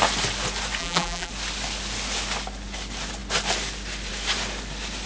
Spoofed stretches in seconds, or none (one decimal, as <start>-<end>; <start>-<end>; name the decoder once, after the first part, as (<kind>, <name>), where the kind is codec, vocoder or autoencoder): 0.8-1.3 (vocoder, BigVGAN v2)